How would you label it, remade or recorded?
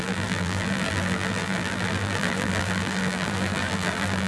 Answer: remade